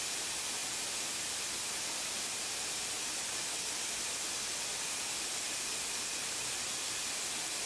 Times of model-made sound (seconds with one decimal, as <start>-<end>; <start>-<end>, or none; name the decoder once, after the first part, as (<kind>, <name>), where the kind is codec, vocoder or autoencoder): none